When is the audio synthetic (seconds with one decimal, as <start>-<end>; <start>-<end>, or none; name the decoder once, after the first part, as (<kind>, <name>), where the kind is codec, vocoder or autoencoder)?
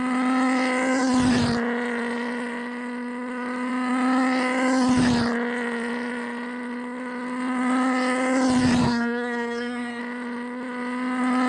8.8-10.0 (codec, SNAC)